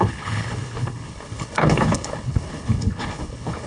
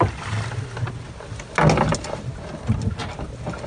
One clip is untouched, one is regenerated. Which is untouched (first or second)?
second